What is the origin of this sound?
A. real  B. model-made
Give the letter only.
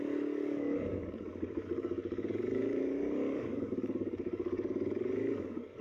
B